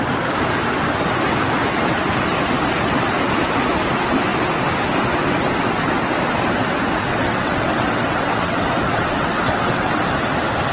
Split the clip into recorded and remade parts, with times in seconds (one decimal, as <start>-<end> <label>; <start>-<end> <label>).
0.0-7.1 recorded; 7.1-10.0 remade; 10.0-10.7 recorded